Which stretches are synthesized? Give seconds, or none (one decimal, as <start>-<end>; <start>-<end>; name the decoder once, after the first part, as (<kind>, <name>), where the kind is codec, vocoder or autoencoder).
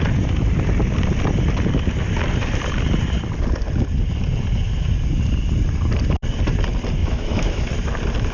7.0-7.7 (autoencoder, DAC-VAE)